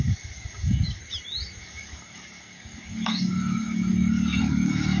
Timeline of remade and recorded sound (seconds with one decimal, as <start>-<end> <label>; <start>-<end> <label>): 0.0-1.0 remade; 1.0-1.6 recorded; 1.6-5.0 remade